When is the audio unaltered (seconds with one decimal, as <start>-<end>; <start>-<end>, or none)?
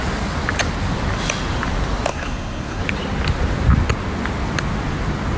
0.0-2.1; 2.8-5.4